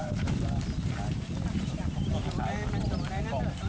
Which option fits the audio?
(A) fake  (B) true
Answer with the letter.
B